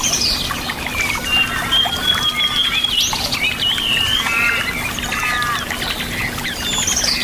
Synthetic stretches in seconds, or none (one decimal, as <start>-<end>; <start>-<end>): 0.0-4.3